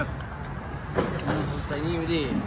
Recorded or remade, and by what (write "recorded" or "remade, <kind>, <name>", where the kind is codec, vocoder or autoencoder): recorded